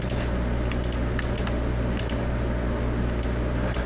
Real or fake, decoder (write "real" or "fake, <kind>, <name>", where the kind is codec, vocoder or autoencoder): real